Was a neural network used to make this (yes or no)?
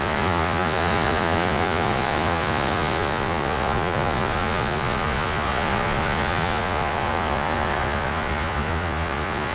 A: yes